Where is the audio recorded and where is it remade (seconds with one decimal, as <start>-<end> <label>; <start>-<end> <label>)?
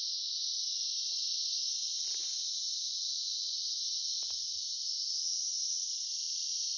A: 0.0-6.8 recorded